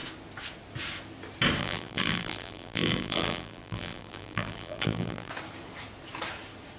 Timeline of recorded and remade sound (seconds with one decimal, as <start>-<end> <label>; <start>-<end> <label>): 0.0-1.6 recorded; 1.6-5.3 remade; 5.3-6.8 recorded